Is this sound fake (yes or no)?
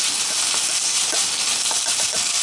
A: no